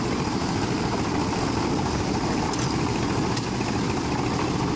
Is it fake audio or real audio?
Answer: real